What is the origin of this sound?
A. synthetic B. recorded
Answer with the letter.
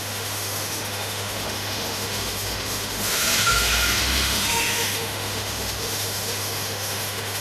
A